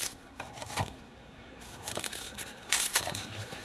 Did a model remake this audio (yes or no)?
yes